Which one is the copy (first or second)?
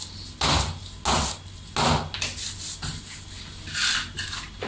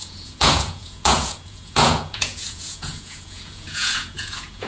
second